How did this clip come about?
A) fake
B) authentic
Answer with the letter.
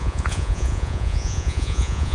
A